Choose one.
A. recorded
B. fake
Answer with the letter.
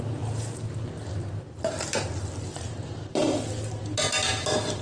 A